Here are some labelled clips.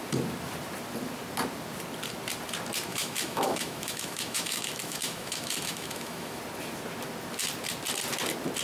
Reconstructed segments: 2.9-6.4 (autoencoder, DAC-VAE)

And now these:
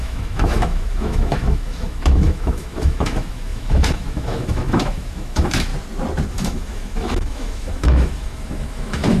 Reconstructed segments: 0.0-5.7 (autoencoder, DAC-VAE); 6.3-9.2